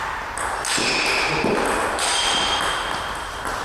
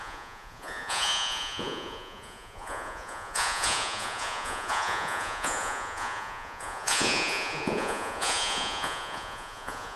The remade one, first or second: second